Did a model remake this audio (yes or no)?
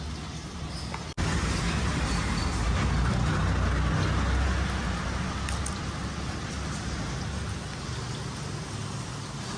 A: no